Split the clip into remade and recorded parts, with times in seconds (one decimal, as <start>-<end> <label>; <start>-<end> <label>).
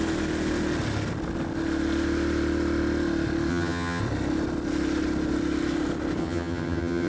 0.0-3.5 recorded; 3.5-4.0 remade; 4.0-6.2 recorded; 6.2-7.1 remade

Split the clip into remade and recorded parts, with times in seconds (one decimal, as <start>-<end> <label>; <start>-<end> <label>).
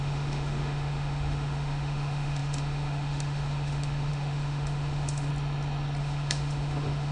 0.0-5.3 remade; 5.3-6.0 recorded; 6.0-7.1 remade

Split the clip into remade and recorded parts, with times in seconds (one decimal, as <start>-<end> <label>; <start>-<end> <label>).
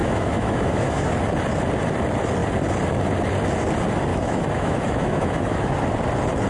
0.0-1.1 remade; 1.1-4.1 recorded; 4.1-5.7 remade; 5.7-6.5 recorded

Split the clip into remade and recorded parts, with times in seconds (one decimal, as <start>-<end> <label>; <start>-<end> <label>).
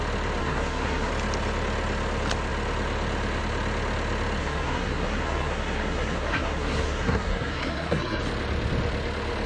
0.0-0.4 recorded; 0.4-1.1 remade; 1.1-4.4 recorded; 4.4-8.2 remade; 8.2-9.5 recorded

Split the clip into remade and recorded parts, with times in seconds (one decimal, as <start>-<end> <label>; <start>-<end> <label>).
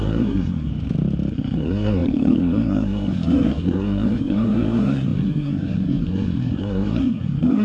0.0-0.7 remade; 0.7-1.3 recorded; 1.3-7.6 remade